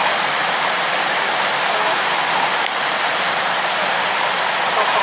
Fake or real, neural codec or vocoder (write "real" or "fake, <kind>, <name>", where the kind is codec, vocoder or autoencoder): real